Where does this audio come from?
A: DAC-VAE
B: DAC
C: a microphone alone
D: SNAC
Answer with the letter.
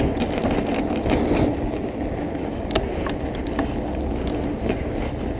C